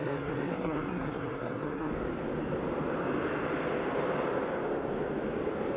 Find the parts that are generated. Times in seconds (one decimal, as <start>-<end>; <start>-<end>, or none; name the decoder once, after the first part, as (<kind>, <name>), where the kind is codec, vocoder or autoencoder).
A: 0.0-1.9 (codec, SNAC)